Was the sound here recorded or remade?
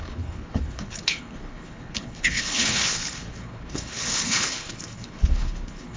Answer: remade